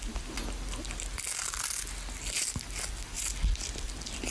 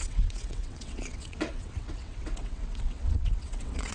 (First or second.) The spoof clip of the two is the second